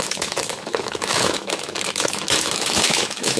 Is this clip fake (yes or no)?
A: yes